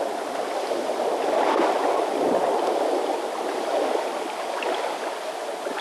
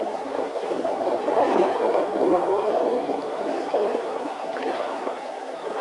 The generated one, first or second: second